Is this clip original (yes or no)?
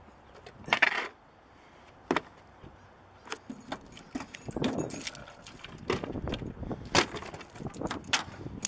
yes